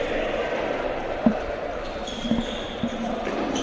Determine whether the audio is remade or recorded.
remade